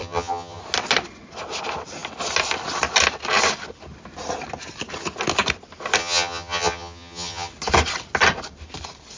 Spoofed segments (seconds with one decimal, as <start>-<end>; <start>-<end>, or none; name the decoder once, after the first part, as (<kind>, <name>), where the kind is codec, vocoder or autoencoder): 0.0-0.6 (vocoder, HiFi-GAN); 6.0-7.5